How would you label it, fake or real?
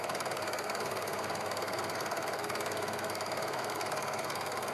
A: fake